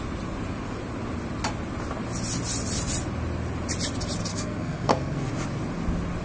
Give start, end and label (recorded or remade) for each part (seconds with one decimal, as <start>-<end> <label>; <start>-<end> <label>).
0.0-4.3 recorded; 4.3-5.3 remade; 5.3-6.2 recorded